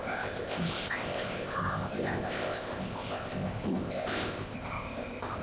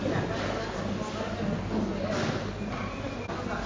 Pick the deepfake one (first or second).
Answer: first